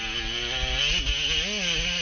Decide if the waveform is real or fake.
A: real